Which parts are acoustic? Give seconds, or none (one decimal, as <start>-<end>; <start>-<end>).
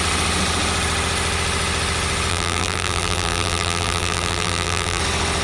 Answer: 0.0-2.3; 5.0-5.4